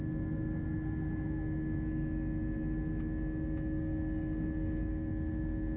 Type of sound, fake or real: real